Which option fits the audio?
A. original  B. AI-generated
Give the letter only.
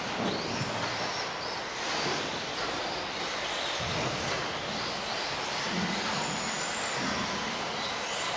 A